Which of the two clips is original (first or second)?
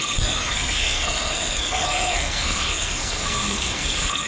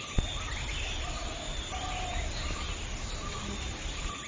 second